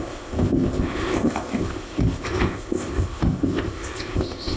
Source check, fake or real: fake